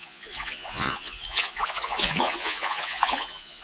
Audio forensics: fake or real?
fake